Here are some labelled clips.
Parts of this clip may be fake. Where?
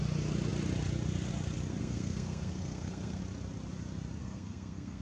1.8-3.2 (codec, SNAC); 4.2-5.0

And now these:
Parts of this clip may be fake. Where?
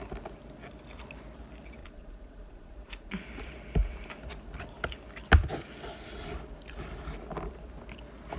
1.8-3.1 (vocoder, Vocos)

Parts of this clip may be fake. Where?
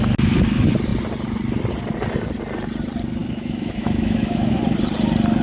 3.2-4.6 (autoencoder, DAC-VAE)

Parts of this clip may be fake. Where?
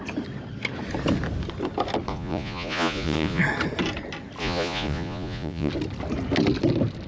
2.1-3.4 (vocoder, Vocos); 4.4-5.7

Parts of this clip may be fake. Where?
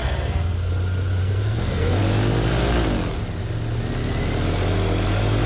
0.0-0.7 (codec, SNAC); 1.2-2.0